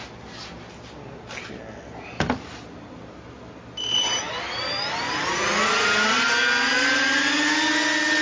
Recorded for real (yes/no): yes